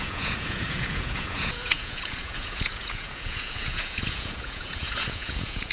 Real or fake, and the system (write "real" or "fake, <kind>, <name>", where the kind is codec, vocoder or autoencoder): fake, vocoder, Vocos